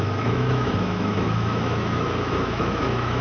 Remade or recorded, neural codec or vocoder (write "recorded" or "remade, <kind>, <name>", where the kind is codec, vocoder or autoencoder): remade, autoencoder, DAC-VAE